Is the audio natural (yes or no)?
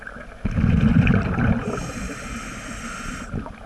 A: yes